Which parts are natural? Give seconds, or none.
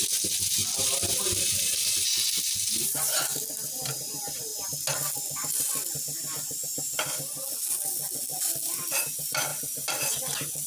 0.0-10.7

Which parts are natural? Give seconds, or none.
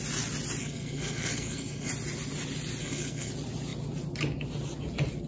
0.0-0.6; 1.9-2.8; 3.3-5.3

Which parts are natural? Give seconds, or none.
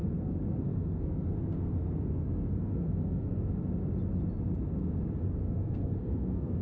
3.3-5.4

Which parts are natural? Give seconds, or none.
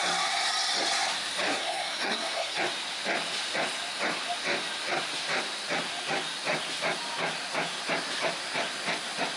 0.0-1.5; 2.6-9.4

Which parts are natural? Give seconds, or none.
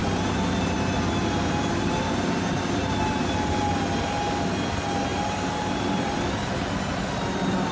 3.6-5.1; 6.3-7.7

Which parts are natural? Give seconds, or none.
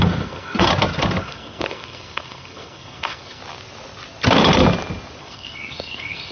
0.7-1.2; 3.4-5.2